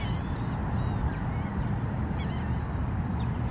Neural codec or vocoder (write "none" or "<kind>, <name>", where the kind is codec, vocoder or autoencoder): none